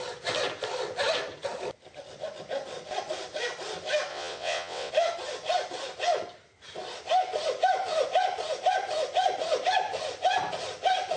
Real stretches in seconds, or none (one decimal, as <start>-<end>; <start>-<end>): 0.0-4.1; 4.9-11.2